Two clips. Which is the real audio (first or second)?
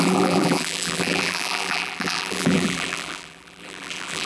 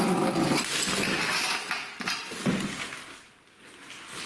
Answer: second